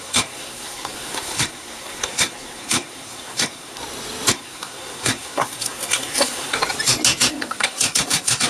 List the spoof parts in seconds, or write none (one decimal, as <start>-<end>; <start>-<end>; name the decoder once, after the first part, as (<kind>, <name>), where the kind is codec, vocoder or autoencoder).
0.0-3.8 (codec, SNAC); 4.3-6.6; 7.3-8.5